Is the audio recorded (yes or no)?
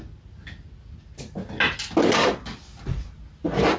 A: yes